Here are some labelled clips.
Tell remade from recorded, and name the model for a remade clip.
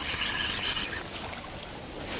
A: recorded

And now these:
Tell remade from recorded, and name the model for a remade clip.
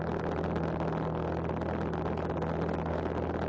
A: recorded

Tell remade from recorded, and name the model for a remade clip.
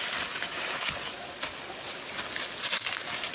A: recorded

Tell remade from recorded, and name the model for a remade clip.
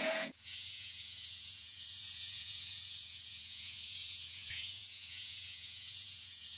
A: remade, vocoder, Vocos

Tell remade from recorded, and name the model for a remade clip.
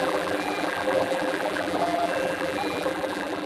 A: remade, vocoder, BigVGAN v2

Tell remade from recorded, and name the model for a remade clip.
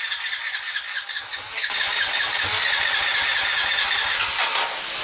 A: recorded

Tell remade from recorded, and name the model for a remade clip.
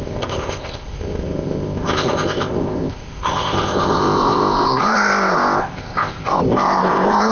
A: remade, codec, ZipCodec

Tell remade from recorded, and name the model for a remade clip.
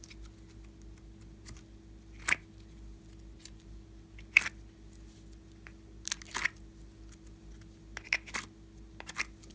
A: recorded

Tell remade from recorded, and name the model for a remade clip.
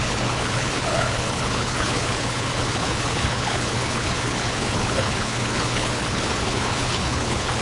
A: remade, codec, HILCodec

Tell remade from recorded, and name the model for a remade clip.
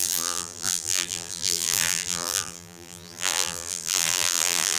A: remade, vocoder, BigVGAN v2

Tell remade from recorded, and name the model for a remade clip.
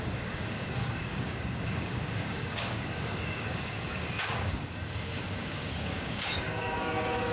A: remade, codec, DAC